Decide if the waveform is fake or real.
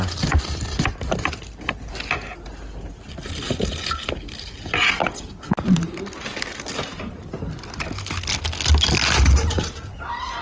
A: real